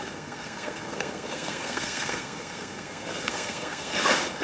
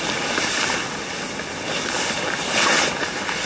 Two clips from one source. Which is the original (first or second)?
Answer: second